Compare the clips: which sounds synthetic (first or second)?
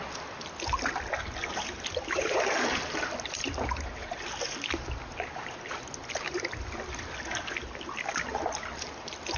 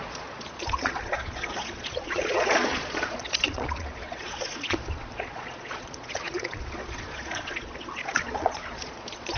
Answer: second